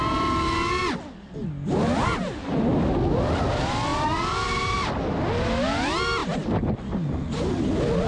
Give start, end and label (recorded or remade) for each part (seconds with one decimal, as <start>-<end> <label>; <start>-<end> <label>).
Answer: 0.0-3.9 recorded; 3.9-4.7 remade; 4.7-8.1 recorded